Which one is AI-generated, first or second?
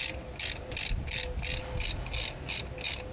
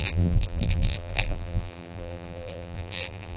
second